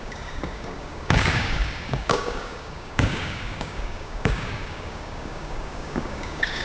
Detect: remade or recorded remade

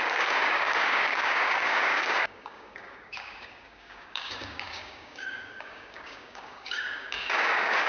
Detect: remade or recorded remade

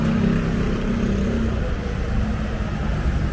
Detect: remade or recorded recorded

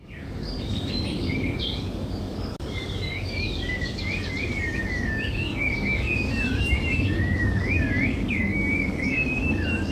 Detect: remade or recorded remade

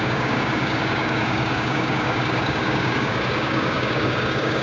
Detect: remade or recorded remade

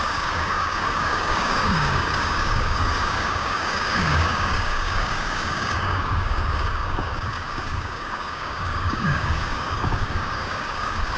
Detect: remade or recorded remade